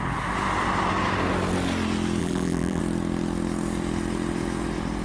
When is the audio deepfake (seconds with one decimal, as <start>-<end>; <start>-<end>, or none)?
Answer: 2.2-2.8